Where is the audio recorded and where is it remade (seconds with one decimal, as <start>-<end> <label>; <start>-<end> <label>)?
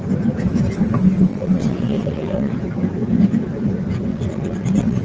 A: 0.0-1.3 recorded; 1.3-2.5 remade; 2.5-4.1 recorded; 4.1-5.0 remade